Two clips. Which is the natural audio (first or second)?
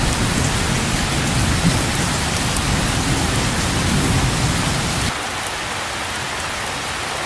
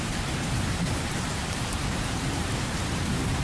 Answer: first